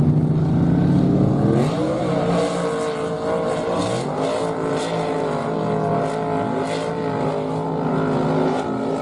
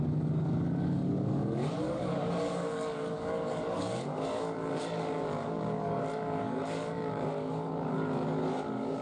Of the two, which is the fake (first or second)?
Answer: second